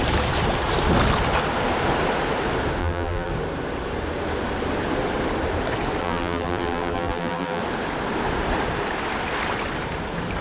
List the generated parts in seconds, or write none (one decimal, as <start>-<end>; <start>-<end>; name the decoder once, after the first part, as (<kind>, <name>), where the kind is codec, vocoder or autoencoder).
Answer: 2.8-3.3 (vocoder, BigVGAN v2); 6.0-7.6